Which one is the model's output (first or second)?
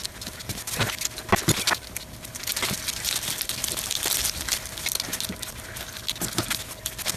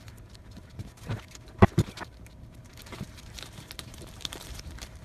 second